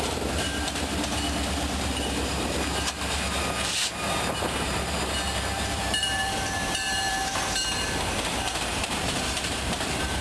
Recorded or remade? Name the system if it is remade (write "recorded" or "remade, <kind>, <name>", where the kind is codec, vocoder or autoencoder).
remade, vocoder, BigVGAN v2